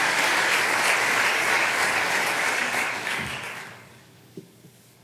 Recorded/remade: remade